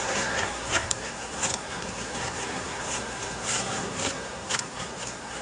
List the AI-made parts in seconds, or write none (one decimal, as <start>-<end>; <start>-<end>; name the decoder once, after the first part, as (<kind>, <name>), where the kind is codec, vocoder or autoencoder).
0.0-5.4 (codec, SNAC)